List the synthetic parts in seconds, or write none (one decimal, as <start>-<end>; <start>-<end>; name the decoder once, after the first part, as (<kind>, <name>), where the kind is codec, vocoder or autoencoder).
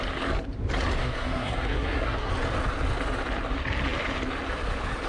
1.0-2.3 (codec, SNAC)